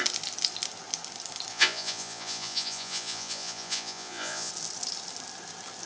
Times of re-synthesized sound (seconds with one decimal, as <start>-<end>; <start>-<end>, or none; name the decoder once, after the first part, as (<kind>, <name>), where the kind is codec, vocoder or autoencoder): 1.5-4.5 (vocoder, Vocos)